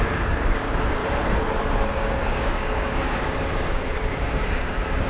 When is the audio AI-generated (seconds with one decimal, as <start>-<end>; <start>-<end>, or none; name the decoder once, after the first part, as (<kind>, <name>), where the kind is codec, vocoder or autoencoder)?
0.0-1.0 (codec, DAC); 1.9-5.1